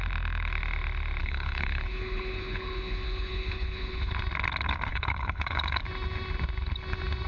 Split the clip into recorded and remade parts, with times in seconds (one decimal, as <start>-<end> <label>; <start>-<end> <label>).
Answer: 0.0-1.2 recorded; 1.2-4.1 remade; 4.1-4.9 recorded; 4.9-5.8 remade; 5.8-7.3 recorded